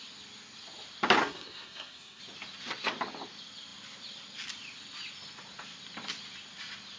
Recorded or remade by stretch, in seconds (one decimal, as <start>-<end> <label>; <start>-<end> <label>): 0.0-1.2 recorded; 1.2-2.2 remade; 2.2-7.0 recorded